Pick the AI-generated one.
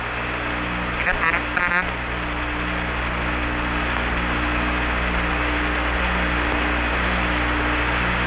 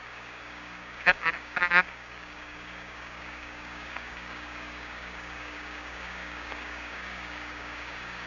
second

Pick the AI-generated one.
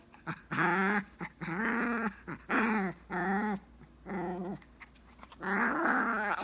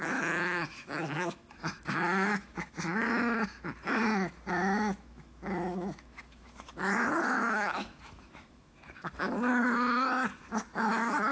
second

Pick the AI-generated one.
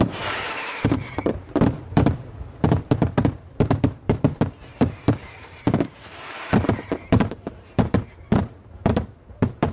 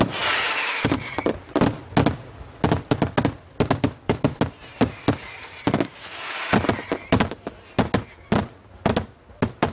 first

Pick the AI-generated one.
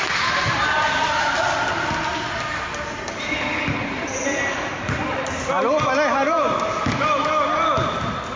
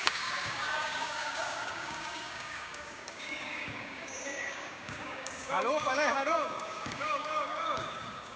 second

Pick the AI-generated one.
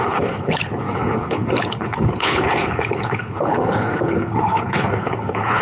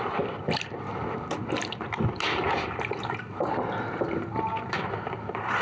first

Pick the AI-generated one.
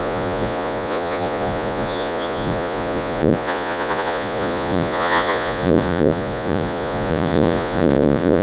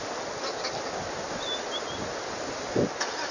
first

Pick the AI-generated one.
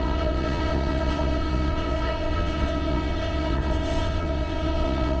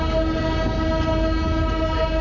first